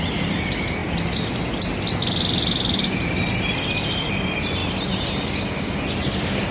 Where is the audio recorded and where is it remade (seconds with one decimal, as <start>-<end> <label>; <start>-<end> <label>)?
0.0-6.5 recorded